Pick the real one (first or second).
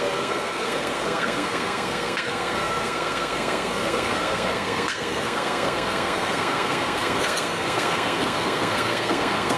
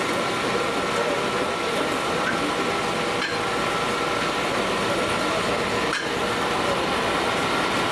second